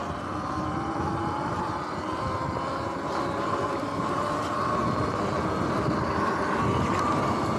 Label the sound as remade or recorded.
recorded